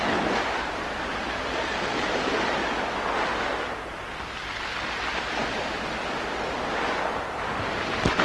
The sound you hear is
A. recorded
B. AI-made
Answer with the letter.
A